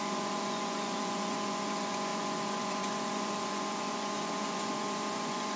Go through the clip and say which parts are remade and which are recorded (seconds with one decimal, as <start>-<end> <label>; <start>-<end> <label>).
0.0-5.6 remade